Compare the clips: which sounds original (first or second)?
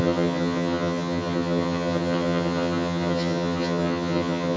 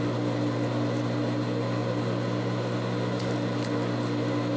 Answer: second